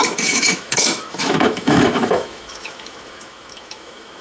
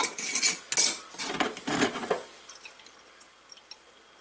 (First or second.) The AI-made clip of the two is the first